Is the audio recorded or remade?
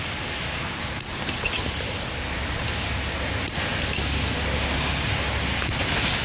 recorded